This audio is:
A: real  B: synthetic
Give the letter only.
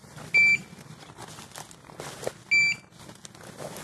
A